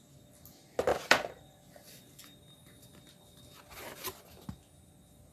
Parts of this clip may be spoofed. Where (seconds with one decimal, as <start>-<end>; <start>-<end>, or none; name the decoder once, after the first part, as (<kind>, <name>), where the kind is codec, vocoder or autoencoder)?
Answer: 0.9-1.9 (vocoder, BigVGAN v2)